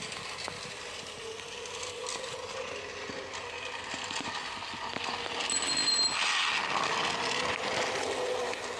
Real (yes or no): yes